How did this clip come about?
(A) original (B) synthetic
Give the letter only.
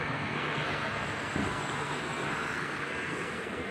B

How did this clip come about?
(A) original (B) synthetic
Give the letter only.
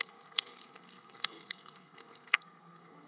B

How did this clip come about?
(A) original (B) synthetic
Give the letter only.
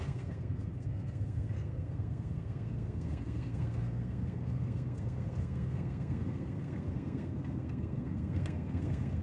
B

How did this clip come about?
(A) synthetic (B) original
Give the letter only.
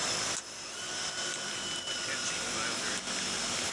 B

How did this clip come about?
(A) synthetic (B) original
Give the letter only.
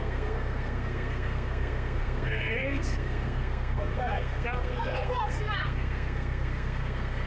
A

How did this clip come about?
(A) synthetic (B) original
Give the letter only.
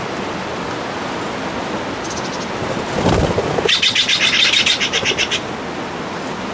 B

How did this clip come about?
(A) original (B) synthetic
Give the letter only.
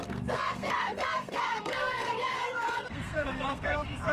B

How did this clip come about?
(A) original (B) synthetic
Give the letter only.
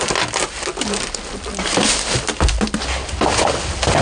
A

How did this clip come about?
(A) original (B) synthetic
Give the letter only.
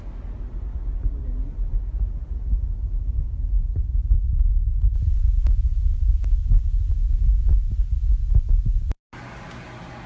A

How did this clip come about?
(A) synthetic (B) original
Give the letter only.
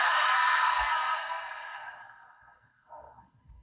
A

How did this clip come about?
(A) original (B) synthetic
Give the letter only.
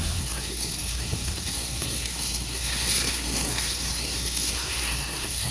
B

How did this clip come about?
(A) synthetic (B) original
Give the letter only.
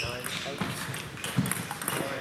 B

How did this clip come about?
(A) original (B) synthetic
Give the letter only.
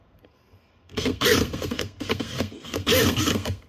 B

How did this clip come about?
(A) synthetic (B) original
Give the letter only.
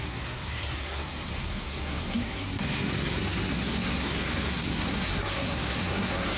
A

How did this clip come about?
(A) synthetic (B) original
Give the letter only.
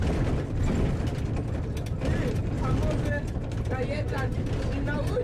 B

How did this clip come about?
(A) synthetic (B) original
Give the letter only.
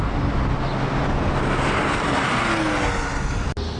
B